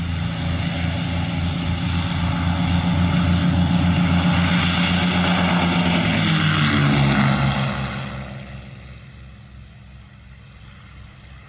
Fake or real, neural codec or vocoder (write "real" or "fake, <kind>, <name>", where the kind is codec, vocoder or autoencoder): real